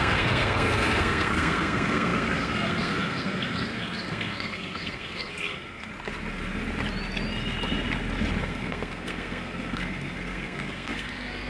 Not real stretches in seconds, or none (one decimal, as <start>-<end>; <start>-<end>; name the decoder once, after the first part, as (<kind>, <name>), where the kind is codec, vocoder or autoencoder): 0.0-5.9 (codec, SNAC); 8.4-11.5

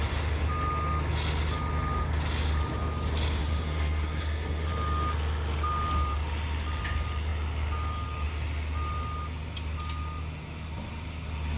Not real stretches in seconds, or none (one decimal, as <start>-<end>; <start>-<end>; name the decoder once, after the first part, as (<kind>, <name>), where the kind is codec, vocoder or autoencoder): 3.4-4.7 (codec, SNAC)

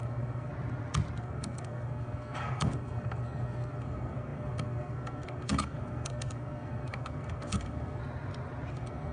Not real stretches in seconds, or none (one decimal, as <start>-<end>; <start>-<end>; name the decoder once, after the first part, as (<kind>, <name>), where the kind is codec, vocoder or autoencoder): 0.0-0.5 (codec, SNAC); 1.2-8.0; 8.7-9.1

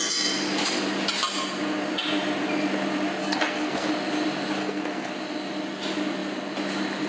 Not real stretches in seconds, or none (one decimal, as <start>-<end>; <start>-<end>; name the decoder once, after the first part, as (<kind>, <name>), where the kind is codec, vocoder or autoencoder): 3.2-3.9 (codec, SNAC); 4.6-5.1

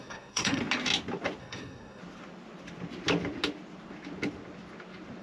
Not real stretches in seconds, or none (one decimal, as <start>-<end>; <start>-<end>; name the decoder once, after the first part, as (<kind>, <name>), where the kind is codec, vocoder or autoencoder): 0.0-0.6 (codec, SNAC); 1.4-2.0

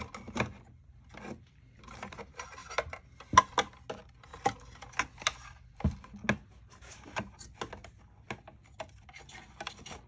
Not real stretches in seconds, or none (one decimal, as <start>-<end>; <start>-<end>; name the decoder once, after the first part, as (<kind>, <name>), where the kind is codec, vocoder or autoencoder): none

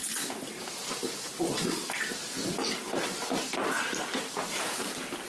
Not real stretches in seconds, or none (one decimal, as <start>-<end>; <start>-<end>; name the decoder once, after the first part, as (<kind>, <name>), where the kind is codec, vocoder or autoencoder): none